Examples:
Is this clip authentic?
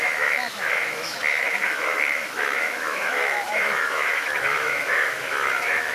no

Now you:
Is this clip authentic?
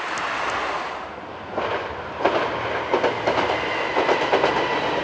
yes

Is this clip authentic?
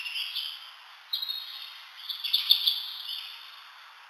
yes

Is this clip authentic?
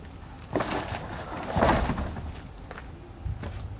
yes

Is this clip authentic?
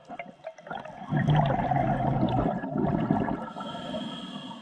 yes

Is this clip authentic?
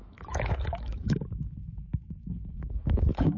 no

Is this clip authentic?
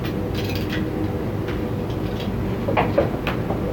yes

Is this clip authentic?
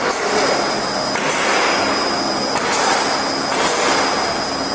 yes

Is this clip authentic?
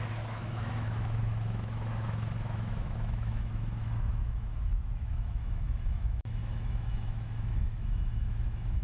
no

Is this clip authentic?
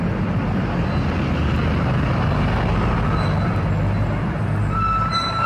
yes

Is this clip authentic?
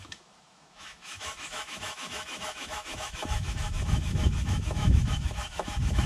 no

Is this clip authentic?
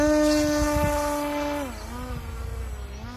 yes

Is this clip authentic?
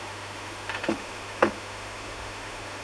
no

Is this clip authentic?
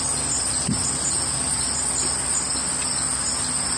yes